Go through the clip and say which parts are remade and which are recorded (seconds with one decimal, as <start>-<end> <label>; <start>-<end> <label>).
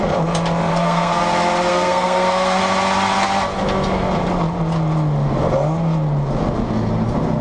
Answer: 0.0-0.7 recorded; 0.7-1.2 remade; 1.2-1.7 recorded; 1.7-2.6 remade; 2.6-7.4 recorded